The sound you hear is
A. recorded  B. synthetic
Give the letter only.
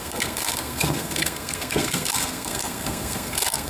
B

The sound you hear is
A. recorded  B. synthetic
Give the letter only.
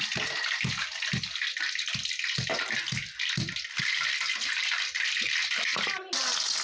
A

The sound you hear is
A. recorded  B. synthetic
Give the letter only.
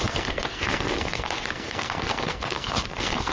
B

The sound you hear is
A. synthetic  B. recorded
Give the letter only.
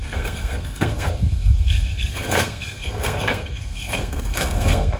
A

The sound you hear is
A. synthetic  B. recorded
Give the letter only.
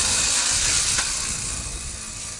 B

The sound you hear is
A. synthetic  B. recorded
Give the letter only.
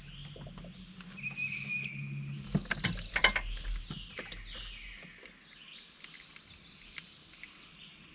B